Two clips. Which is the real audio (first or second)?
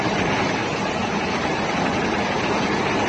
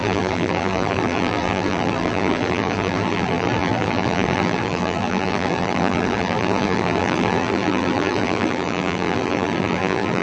first